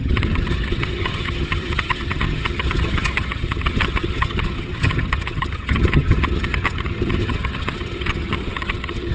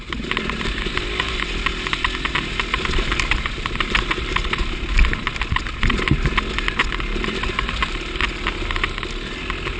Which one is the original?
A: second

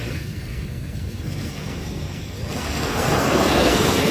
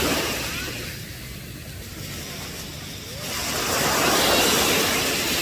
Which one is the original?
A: second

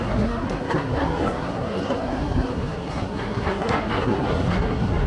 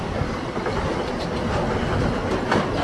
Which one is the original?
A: second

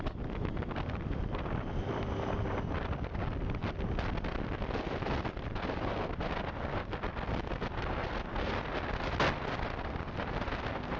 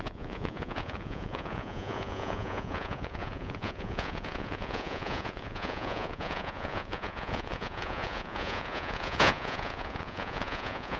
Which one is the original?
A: first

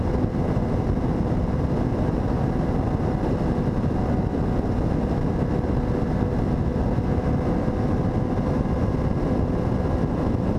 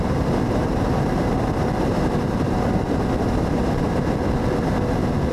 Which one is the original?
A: first